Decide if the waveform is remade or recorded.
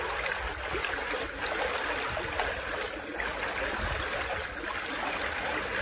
recorded